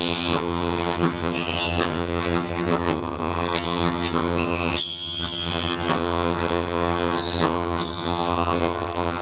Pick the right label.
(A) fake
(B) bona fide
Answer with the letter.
A